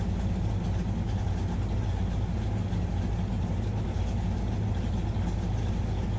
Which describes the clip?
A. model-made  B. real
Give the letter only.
B